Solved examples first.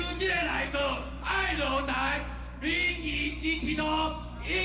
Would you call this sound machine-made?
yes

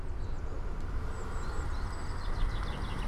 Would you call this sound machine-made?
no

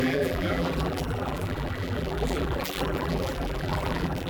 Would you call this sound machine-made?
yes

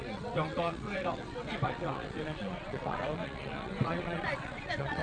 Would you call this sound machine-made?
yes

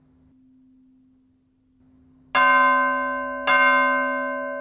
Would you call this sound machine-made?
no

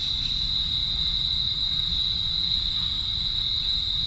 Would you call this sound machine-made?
yes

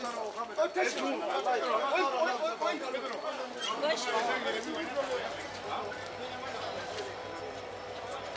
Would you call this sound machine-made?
no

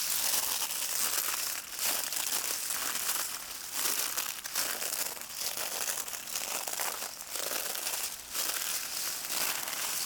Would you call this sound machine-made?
no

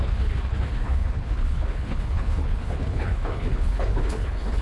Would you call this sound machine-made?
yes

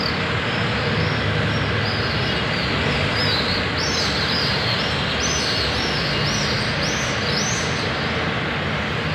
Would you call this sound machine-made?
no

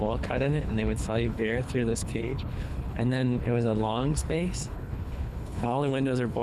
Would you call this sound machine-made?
yes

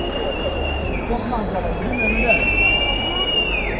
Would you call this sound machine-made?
no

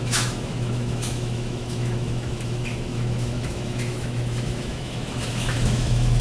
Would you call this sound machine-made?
yes